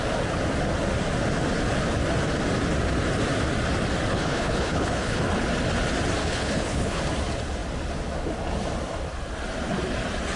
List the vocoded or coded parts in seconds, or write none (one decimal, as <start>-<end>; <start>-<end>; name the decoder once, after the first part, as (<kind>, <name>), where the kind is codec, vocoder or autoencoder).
4.1-5.2 (codec, HILCodec); 6.2-7.0